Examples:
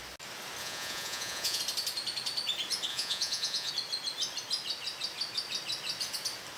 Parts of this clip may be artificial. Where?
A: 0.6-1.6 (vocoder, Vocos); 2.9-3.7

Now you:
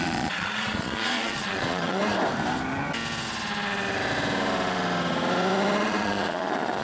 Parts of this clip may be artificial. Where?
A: 0.0-2.0 (vocoder, Vocos); 5.8-6.8

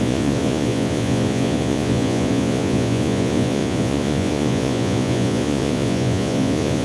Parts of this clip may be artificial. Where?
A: 0.0-6.8 (vocoder, Vocos)

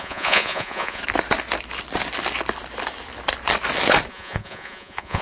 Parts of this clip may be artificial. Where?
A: 0.0-1.0 (vocoder, Vocos); 4.1-5.2

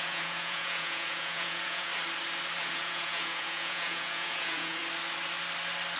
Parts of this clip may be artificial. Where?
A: 0.0-1.9 (vocoder, Vocos); 2.6-4.8

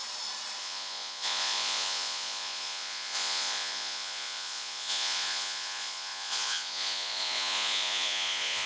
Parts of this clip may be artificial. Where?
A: 0.6-8.7 (vocoder, Vocos)

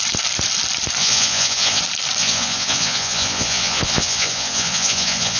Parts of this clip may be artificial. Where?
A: 1.0-1.8 (vocoder, Vocos); 2.2-5.4